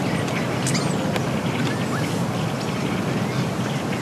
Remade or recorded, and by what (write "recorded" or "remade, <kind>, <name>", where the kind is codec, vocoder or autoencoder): recorded